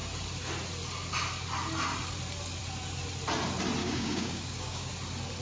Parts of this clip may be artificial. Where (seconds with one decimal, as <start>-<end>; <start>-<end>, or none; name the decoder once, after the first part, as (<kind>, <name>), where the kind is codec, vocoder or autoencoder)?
3.8-4.9 (codec, DAC)